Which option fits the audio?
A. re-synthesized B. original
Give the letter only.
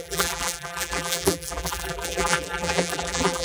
A